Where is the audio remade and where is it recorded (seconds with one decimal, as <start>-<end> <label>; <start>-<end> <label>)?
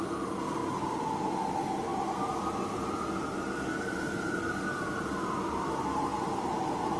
0.0-0.6 recorded; 0.6-1.3 remade; 1.3-3.7 recorded; 3.7-4.4 remade; 4.4-6.1 recorded; 6.1-7.0 remade